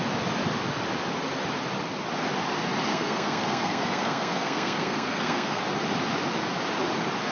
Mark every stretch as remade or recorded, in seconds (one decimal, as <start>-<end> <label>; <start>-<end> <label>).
0.0-2.9 recorded; 2.9-5.6 remade; 5.6-7.3 recorded